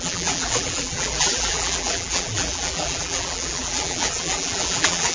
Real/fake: fake